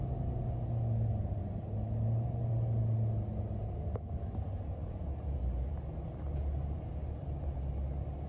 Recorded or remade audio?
recorded